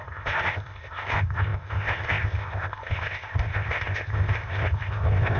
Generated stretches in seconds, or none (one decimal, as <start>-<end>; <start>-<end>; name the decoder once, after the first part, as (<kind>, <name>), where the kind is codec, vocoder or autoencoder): 0.0-5.4 (codec, ZipCodec)